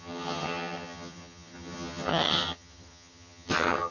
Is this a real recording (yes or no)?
no